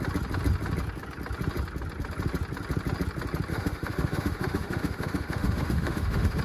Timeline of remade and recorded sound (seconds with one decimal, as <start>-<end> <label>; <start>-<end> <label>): 0.0-3.5 recorded; 3.5-6.4 remade